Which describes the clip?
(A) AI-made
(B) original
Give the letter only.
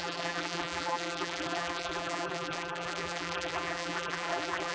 A